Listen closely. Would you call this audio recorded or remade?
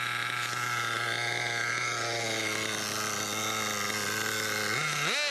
recorded